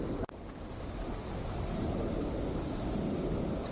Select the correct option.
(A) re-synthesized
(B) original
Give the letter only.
B